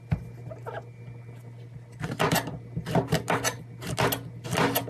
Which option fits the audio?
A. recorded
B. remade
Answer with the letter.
A